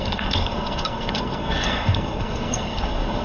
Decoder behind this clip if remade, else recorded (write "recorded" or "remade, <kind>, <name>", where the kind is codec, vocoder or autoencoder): remade, codec, SNAC